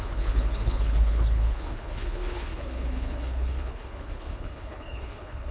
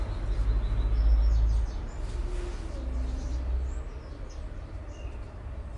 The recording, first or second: second